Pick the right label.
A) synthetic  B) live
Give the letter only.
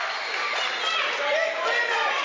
B